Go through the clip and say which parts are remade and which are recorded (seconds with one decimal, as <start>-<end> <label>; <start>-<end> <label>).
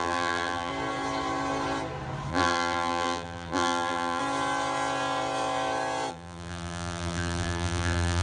0.0-0.7 remade; 0.7-2.3 recorded; 2.3-4.2 remade; 4.2-6.1 recorded; 6.1-8.2 remade